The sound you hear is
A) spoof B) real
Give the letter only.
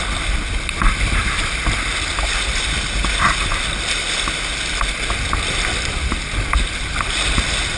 B